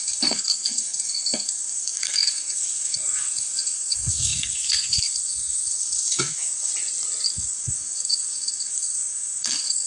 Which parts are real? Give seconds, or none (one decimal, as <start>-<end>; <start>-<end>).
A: 6.7-7.3